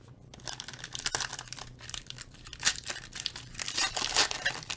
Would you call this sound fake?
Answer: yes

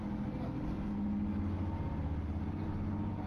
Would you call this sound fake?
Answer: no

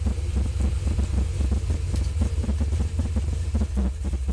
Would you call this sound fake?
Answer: yes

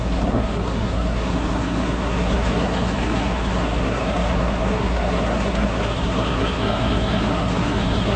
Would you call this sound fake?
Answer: yes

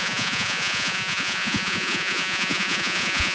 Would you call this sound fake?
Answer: yes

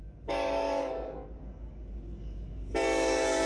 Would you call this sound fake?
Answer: yes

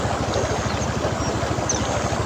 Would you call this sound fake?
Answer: no